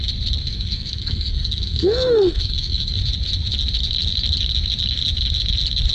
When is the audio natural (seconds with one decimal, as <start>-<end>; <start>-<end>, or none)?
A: 0.0-0.4; 3.0-5.9